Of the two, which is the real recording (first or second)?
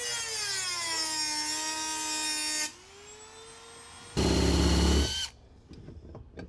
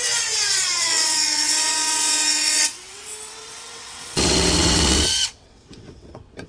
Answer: first